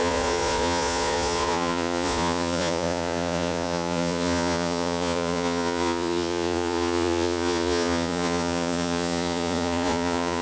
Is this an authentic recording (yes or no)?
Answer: no